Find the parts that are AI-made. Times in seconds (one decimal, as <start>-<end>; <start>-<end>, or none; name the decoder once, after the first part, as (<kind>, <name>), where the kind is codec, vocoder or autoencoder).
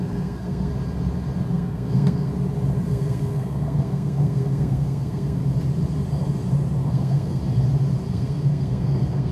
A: 0.0-0.7 (codec, SNAC); 1.5-2.3; 2.9-5.4; 6.9-7.4; 8.1-9.3